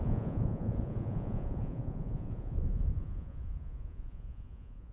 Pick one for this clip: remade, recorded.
remade